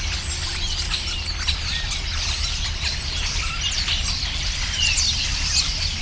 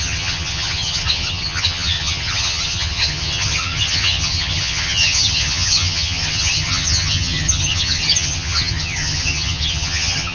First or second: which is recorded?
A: first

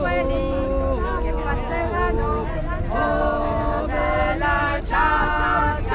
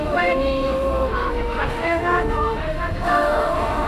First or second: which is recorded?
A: first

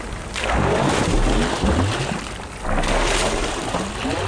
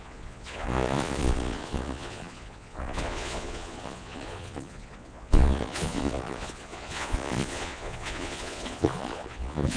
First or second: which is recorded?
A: first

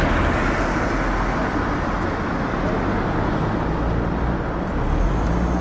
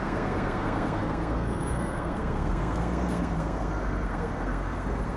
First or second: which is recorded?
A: first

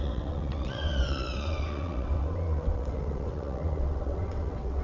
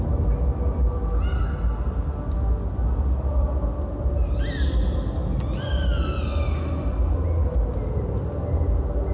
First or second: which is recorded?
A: second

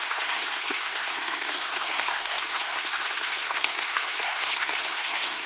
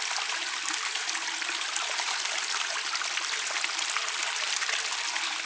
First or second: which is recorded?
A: second